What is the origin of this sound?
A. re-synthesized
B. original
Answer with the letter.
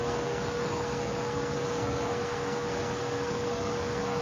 A